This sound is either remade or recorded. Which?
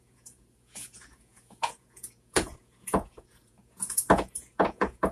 remade